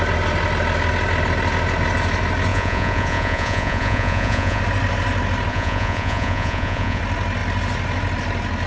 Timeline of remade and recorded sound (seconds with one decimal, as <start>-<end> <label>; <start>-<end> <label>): 0.0-2.5 recorded; 2.5-4.6 remade; 4.6-5.5 recorded; 5.5-7.0 remade; 7.0-8.7 recorded